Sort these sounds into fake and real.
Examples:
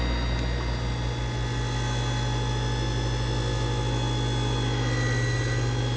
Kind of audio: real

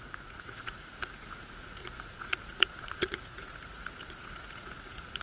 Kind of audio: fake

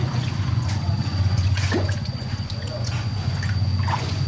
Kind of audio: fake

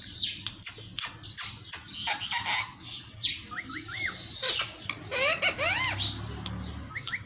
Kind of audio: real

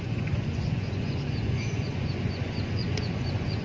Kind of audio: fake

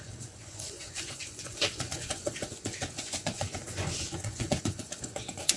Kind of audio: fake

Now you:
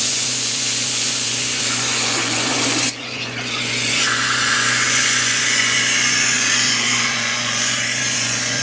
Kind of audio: fake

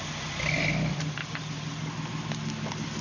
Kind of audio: real